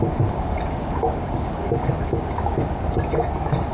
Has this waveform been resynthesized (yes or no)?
yes